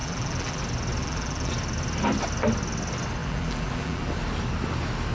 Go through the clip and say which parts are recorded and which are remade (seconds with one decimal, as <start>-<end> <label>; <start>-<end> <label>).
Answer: 0.0-0.6 remade; 0.6-1.0 recorded; 1.0-1.5 remade; 1.5-3.2 recorded; 3.2-4.1 remade; 4.1-5.1 recorded